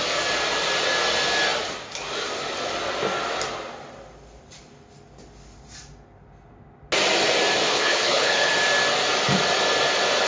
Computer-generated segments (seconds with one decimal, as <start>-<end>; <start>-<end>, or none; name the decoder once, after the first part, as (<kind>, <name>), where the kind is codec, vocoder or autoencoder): 7.7-8.5 (codec, HILCodec)